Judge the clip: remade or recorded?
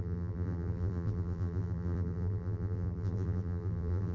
remade